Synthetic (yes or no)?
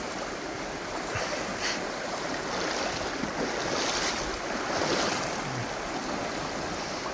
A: no